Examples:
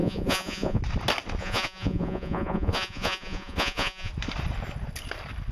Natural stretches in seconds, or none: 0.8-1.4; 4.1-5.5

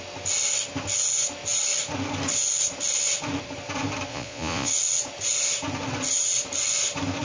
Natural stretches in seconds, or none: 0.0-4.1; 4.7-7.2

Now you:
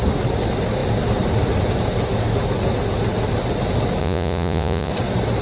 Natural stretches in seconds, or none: 0.0-4.0; 4.9-5.4

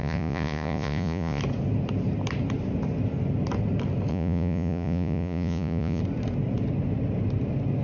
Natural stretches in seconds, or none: 1.4-4.1; 6.0-7.8

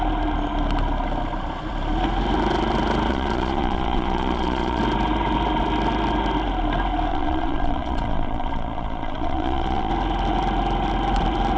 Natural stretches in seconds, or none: 0.0-3.1; 4.8-7.1; 9.9-11.6

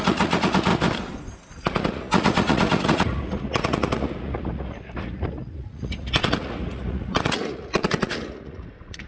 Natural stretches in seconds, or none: 0.7-1.5